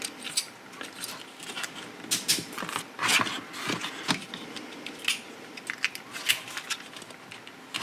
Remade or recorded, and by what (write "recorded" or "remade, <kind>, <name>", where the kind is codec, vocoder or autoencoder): recorded